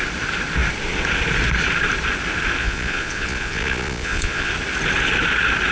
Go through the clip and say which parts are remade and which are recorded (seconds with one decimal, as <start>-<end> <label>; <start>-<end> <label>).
0.0-2.6 recorded; 2.6-4.5 remade; 4.5-5.7 recorded